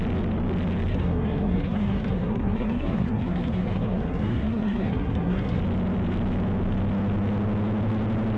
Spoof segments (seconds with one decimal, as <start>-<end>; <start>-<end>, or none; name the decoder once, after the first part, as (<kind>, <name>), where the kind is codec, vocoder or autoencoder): 0.9-5.6 (codec, SNAC)